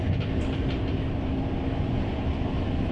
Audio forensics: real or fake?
real